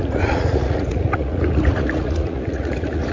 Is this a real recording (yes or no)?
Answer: no